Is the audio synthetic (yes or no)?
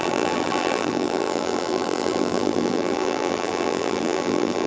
yes